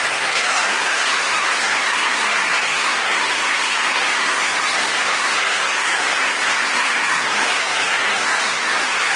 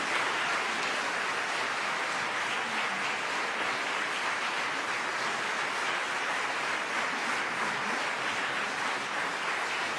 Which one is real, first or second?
second